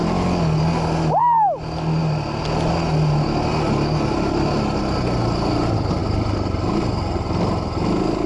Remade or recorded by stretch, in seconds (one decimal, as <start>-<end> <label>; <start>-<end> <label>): 0.0-8.3 recorded